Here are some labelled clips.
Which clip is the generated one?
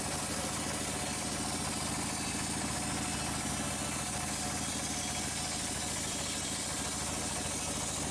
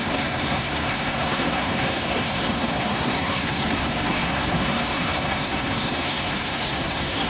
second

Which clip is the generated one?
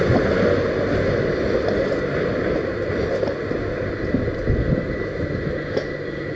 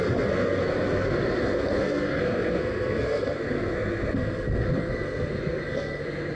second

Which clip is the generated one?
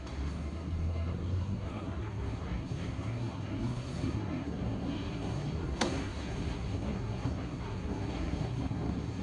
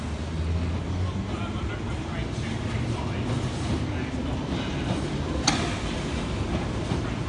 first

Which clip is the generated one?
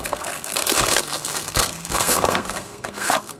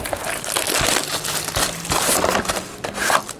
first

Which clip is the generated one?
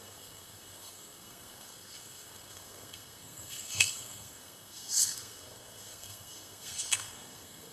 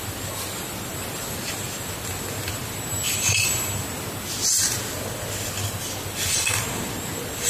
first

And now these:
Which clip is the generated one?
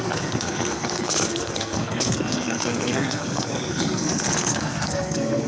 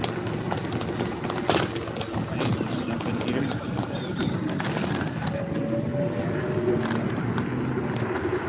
first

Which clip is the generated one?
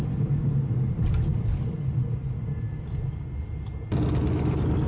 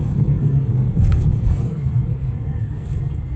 second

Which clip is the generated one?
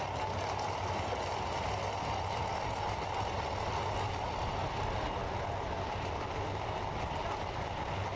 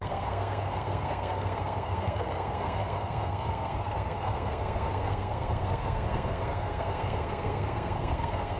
second